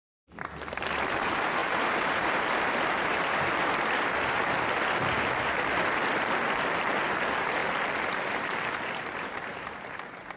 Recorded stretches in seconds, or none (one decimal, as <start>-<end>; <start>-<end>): 0.0-1.6; 3.7-10.4